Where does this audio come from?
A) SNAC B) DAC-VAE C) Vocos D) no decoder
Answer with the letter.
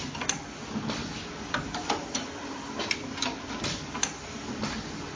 D